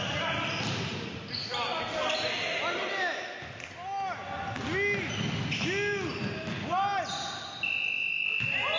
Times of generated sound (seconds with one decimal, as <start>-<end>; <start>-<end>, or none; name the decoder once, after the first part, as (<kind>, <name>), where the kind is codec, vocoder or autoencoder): none